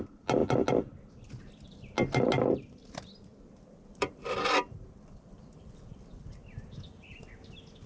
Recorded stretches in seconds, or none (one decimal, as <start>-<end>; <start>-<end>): 0.0-3.3; 7.2-7.9